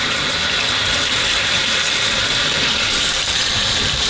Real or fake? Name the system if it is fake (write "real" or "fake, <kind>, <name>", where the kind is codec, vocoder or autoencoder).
fake, vocoder, BigVGAN v2